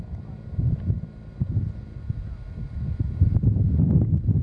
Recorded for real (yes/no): yes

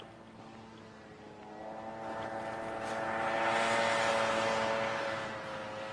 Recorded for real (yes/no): yes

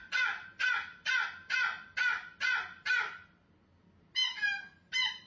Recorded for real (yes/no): yes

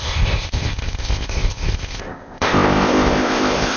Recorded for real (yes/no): no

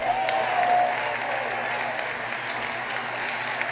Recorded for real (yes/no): yes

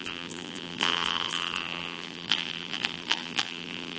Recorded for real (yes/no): no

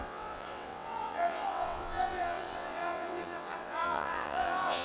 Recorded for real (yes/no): no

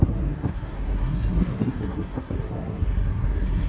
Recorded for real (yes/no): no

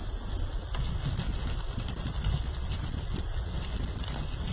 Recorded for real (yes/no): yes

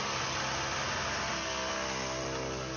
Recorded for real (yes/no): yes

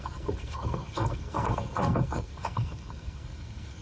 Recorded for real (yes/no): no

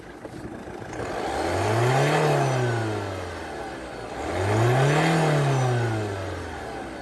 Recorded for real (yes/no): yes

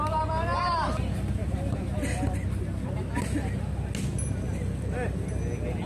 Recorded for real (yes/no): yes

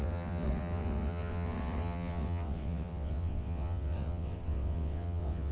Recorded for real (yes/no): no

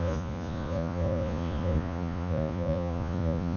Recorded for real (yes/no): no